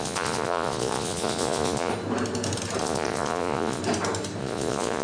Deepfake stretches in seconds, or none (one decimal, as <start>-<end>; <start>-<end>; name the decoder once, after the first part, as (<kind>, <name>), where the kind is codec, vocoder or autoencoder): 0.0-1.9 (vocoder, Vocos); 2.8-3.8; 4.4-5.0